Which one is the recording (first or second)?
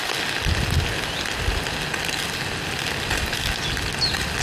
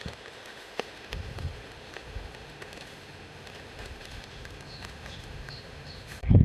first